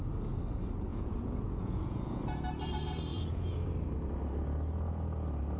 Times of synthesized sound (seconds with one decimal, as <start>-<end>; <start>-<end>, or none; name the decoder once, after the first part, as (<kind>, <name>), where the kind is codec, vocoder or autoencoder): 0.9-2.2 (vocoder, Vocos); 3.1-3.6